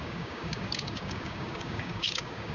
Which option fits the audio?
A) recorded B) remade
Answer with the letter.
B